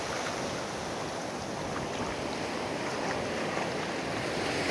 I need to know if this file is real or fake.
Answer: real